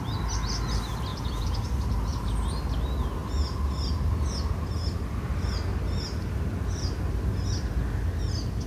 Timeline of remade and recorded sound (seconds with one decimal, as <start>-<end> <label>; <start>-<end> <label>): 0.0-1.1 recorded; 1.1-1.6 remade; 1.6-8.7 recorded